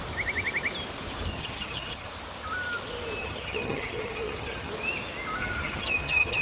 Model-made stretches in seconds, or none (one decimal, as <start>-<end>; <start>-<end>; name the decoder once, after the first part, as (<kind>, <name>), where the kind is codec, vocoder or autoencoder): 1.3-2.1 (vocoder, HiFi-GAN); 3.2-4.7; 5.4-6.4